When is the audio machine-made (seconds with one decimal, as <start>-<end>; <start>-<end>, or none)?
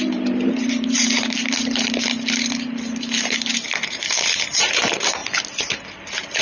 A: 0.0-5.2